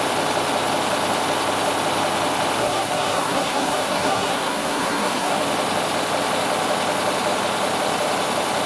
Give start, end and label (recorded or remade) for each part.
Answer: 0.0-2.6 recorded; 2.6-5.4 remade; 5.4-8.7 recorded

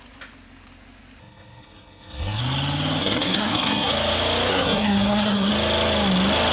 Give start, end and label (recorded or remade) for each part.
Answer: 0.0-1.2 recorded; 1.2-2.4 remade; 2.4-3.0 recorded; 3.0-3.9 remade; 3.9-4.5 recorded; 4.5-5.5 remade; 5.5-6.5 recorded

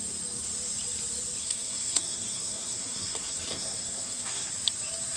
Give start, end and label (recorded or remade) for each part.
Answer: 0.0-1.4 recorded; 1.4-4.5 remade; 4.5-5.2 recorded

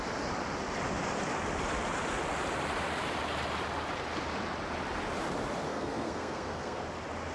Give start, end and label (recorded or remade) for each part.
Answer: 0.0-5.7 recorded; 5.7-6.8 remade; 6.8-7.3 recorded

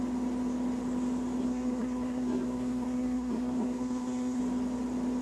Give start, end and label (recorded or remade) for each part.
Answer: 0.0-1.4 recorded; 1.4-4.4 remade; 4.4-5.2 recorded